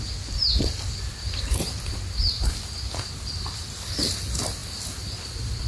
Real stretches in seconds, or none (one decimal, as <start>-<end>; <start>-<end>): 0.0-5.7